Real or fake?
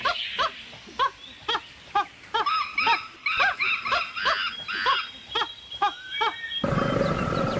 real